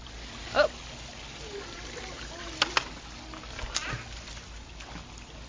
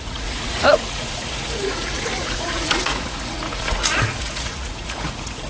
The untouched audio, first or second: first